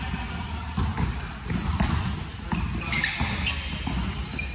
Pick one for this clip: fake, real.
real